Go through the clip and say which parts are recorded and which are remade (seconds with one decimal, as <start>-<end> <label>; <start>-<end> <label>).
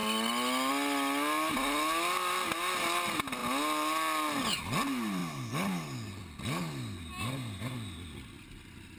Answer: 0.0-9.0 recorded